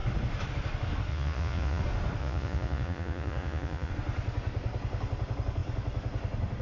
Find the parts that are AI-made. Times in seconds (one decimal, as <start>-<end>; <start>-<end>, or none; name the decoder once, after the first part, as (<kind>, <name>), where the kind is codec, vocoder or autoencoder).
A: 1.1-1.8 (vocoder, Vocos); 2.2-3.9